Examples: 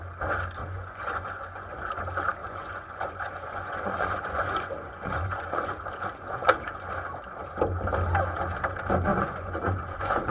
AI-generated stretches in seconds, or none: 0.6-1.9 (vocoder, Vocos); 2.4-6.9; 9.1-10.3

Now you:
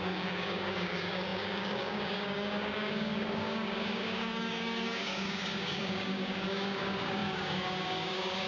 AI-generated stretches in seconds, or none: 0.0-8.5 (codec, DAC)

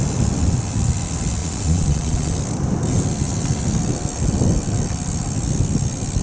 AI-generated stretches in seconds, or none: 1.4-2.3 (vocoder, Vocos)